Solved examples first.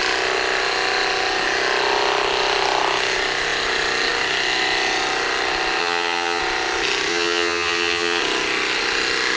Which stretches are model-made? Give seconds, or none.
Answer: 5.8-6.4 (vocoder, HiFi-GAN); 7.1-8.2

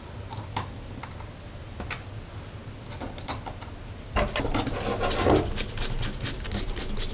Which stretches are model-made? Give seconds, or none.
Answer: none